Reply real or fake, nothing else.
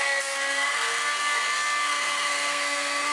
fake